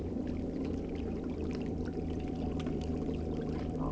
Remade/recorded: remade